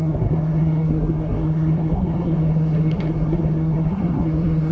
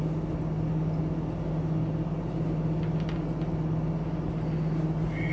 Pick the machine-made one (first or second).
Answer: first